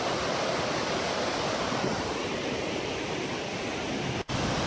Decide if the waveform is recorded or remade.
recorded